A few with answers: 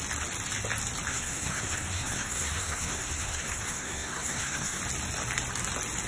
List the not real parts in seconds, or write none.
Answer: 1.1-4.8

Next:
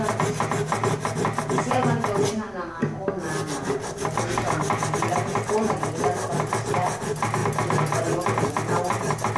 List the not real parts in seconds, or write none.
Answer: none

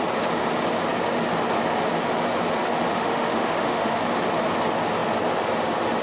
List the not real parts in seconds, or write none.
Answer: 2.9-4.0

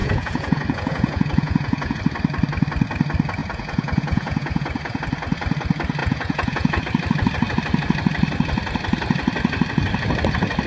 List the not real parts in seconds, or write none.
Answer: 0.0-2.0; 3.4-5.0; 6.0-6.8

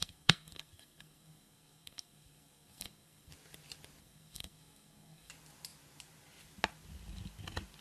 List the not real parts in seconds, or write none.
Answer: 0.0-3.3; 4.0-5.3